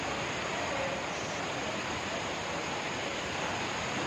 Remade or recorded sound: recorded